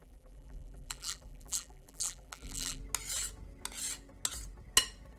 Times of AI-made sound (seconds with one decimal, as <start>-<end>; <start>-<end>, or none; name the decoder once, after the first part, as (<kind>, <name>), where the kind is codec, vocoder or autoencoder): 0.0-2.8 (vocoder, BigVGAN v2)